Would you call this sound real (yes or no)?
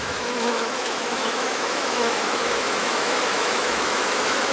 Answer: no